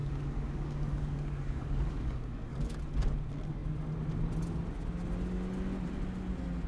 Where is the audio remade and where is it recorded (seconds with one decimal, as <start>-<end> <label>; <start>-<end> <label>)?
0.0-2.8 remade; 2.8-6.7 recorded